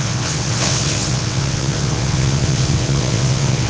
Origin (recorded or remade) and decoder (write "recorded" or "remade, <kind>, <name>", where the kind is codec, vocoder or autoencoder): remade, vocoder, WaveNeXt